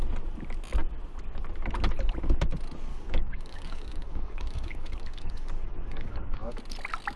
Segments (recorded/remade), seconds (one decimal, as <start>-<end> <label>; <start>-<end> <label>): 0.0-2.9 recorded; 2.9-6.6 remade; 6.6-7.2 recorded